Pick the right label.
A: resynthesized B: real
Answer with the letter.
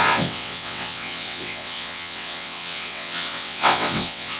A